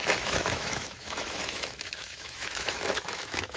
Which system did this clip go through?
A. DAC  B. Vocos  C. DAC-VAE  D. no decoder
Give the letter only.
C